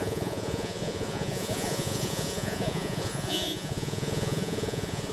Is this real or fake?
fake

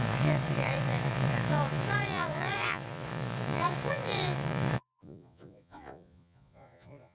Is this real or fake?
fake